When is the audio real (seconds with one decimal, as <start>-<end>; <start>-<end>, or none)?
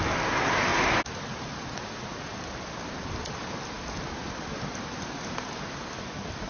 0.0-6.5